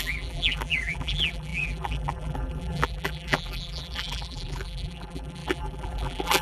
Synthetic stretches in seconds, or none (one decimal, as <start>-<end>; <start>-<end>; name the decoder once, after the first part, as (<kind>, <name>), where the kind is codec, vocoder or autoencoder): 0.0-6.4 (vocoder, BigVGAN v2)